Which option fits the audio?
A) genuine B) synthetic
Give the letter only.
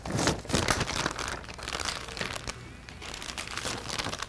A